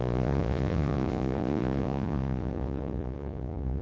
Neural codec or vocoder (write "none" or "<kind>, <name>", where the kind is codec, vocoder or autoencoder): vocoder, Vocos